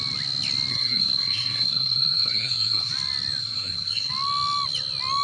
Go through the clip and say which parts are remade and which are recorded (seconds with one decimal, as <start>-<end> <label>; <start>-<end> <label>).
0.0-0.7 recorded; 0.7-2.9 remade; 2.9-3.4 recorded; 3.4-4.1 remade; 4.1-5.2 recorded